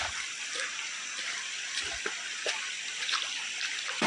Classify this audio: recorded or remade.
remade